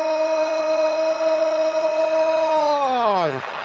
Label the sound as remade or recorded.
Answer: remade